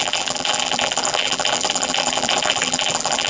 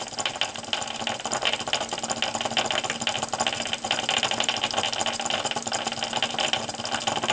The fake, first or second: first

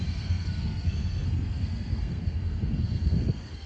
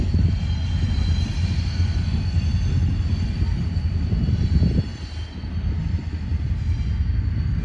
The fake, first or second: first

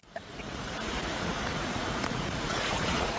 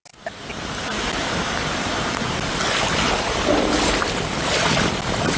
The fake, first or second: first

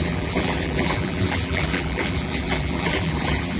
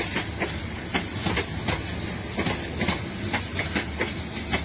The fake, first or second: first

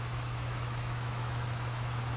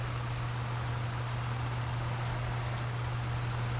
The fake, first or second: first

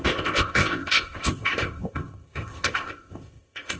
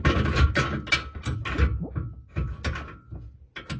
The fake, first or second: first